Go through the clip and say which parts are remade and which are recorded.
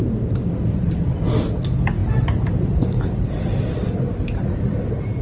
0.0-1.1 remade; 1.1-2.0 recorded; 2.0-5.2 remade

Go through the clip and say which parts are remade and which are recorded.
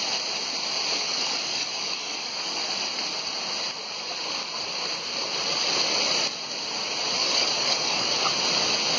0.0-1.0 recorded; 1.0-2.5 remade; 2.5-7.2 recorded; 7.2-8.1 remade; 8.1-9.0 recorded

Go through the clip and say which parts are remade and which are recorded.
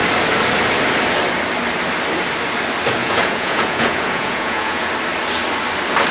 0.0-3.0 recorded; 3.0-4.9 remade; 4.9-6.1 recorded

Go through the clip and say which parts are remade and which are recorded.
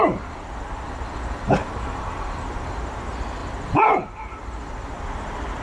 0.0-1.6 recorded; 1.6-2.7 remade; 2.7-5.6 recorded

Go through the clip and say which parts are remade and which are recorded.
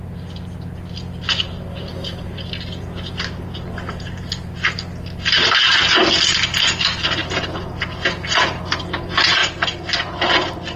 0.0-10.8 recorded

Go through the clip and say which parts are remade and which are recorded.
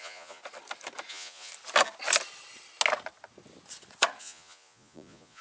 0.0-0.4 remade; 0.4-1.1 recorded; 1.1-1.5 remade; 1.5-4.2 recorded; 4.2-5.4 remade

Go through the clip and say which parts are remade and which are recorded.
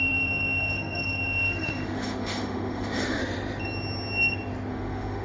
0.0-3.2 remade; 3.2-4.7 recorded; 4.7-5.2 remade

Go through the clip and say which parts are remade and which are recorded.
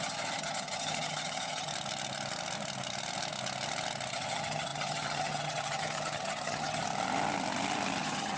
0.0-1.7 remade; 1.7-4.1 recorded; 4.1-6.8 remade; 6.8-8.0 recorded; 8.0-8.4 remade